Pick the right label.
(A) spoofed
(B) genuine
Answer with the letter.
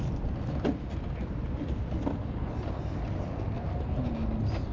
B